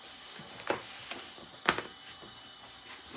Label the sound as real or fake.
real